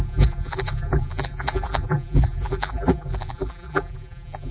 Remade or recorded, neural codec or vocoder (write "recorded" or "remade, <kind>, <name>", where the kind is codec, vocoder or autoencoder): remade, vocoder, BigVGAN v2